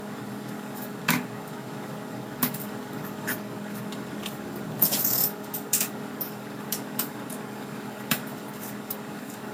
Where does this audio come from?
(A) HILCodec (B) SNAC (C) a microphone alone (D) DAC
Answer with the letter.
D